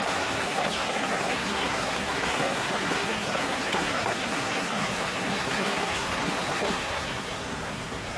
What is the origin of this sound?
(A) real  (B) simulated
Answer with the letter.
B